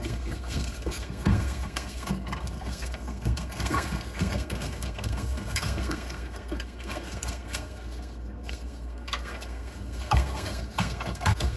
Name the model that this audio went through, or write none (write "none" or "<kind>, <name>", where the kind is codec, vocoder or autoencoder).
codec, SNAC